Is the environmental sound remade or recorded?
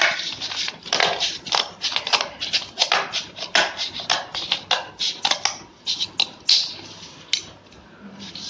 recorded